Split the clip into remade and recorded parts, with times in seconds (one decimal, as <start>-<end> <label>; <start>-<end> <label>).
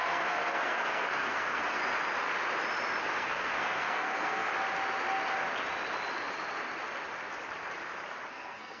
0.0-1.8 remade; 1.8-3.0 recorded; 3.0-4.5 remade; 4.5-8.3 recorded; 8.3-8.8 remade